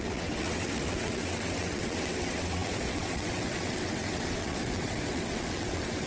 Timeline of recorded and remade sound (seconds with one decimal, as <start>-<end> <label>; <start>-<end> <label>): 0.0-6.1 remade